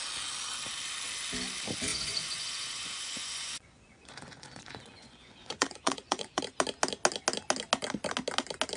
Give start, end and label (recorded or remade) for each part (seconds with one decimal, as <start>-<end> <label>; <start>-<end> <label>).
0.0-1.9 recorded; 1.9-6.4 remade; 6.4-8.8 recorded